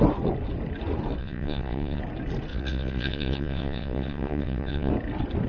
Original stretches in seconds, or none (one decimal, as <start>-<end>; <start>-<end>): 0.0-1.2; 2.0-2.5; 4.9-5.5